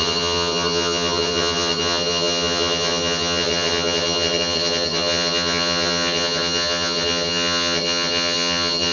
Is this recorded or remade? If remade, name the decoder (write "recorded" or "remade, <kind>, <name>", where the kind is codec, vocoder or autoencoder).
remade, vocoder, HiFi-GAN